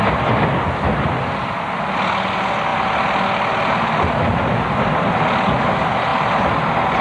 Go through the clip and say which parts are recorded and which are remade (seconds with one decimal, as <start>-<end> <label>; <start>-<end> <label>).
0.0-7.0 recorded